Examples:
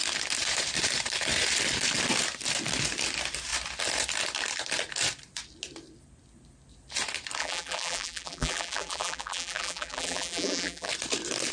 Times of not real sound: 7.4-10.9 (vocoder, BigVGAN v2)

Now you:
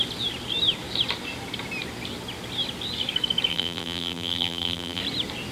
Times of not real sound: 3.5-5.0 (vocoder, BigVGAN v2)

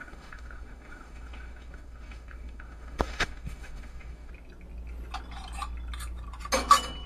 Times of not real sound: 0.0-4.3 (autoencoder, DAC-VAE)

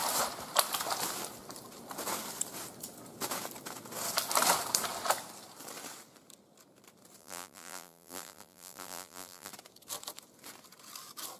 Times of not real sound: 7.2-9.5 (vocoder, BigVGAN v2)

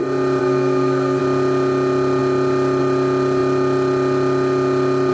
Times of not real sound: 0.4-1.2 (codec, SNAC)